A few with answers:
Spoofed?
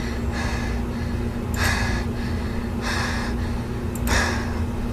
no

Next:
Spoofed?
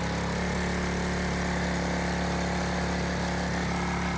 no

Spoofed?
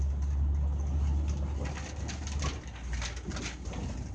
no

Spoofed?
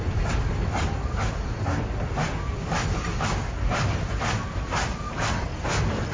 yes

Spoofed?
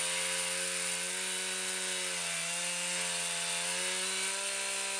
no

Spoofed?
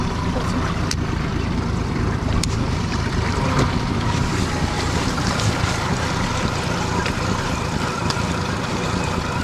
yes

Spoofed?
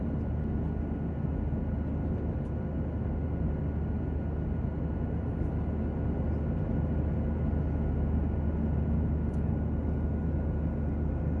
no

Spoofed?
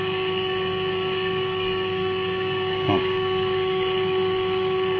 yes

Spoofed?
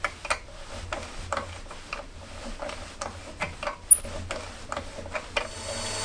no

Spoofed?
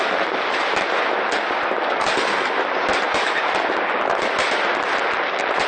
no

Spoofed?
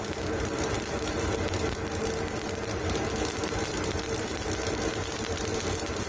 no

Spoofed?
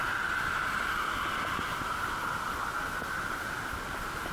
no